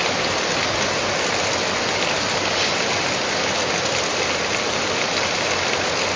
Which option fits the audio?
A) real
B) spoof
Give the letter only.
A